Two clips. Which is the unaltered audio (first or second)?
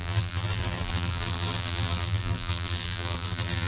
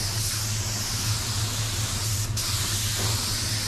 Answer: second